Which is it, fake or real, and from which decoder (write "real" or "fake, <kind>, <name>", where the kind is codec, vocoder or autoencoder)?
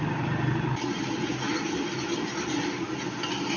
real